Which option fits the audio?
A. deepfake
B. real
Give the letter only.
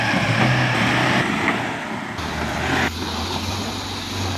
B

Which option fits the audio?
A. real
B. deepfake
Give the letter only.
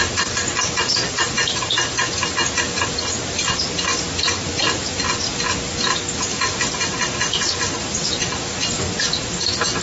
A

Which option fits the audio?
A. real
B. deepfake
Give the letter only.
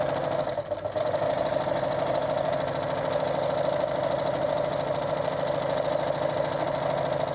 A